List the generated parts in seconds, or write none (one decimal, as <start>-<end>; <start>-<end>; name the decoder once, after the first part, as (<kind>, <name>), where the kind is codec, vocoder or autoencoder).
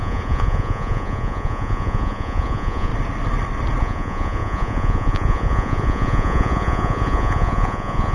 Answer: 0.0-2.9 (vocoder, Vocos); 3.8-8.1